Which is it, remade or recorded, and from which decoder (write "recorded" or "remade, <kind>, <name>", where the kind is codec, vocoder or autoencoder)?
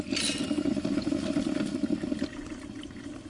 recorded